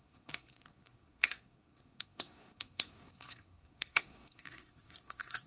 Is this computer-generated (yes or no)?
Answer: yes